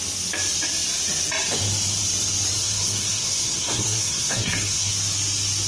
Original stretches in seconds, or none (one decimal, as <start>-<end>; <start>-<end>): 0.0-2.6; 4.9-5.7